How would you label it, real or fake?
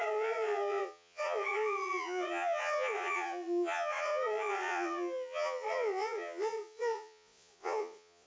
fake